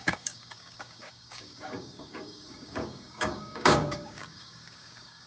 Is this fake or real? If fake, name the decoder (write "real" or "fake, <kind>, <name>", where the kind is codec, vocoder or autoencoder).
fake, codec, DAC